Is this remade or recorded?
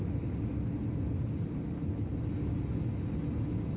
recorded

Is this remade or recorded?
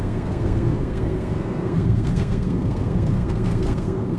remade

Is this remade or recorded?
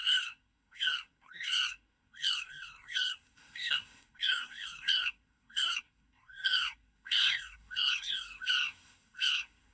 remade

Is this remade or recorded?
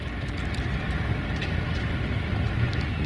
recorded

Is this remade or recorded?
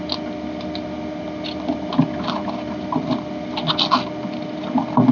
recorded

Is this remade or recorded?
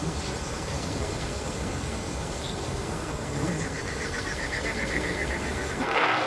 remade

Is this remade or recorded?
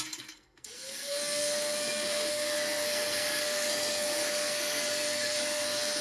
remade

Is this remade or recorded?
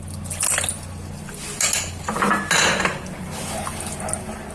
recorded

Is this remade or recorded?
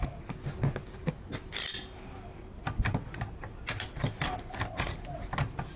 recorded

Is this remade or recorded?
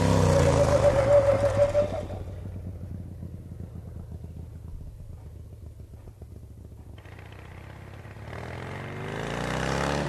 recorded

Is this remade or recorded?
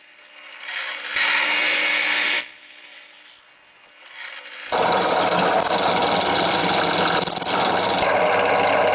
recorded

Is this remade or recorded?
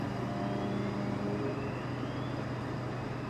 recorded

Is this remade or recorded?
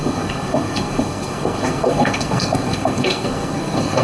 remade